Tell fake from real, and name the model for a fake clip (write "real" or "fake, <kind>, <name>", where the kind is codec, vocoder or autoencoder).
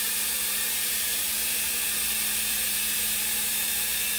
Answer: fake, vocoder, BigVGAN v2